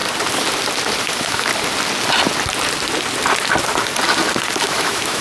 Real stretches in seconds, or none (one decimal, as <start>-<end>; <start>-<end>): 0.0-1.0; 1.5-4.6